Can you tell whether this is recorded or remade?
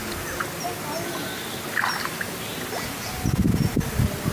recorded